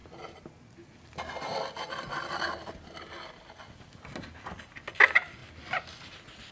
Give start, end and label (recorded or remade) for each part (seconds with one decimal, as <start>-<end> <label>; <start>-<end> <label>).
0.0-6.5 recorded